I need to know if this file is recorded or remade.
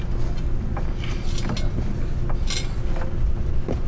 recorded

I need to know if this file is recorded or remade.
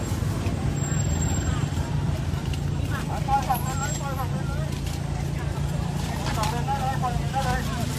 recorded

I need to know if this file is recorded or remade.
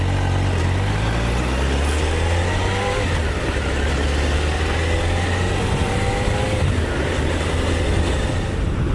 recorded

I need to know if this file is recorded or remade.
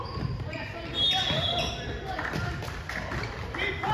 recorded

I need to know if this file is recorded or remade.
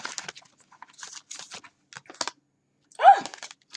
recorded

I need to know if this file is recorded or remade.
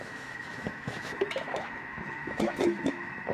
remade